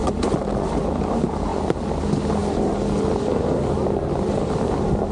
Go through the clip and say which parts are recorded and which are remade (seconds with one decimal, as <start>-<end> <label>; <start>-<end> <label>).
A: 0.0-5.1 recorded